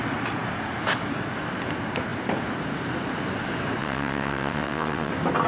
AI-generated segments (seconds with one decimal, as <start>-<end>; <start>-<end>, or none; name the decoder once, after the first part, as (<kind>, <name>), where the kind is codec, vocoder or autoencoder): 3.8-5.1 (vocoder, WaveNeXt)